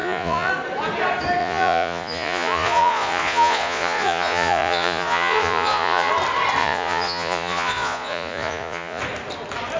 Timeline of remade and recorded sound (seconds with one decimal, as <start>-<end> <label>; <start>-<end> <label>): 0.0-0.5 remade; 0.5-1.4 recorded; 1.4-6.1 remade; 6.1-6.6 recorded; 6.6-9.0 remade; 9.0-9.8 recorded